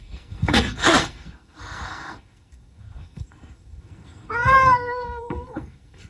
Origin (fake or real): fake